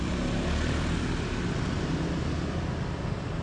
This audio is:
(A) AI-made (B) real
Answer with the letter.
B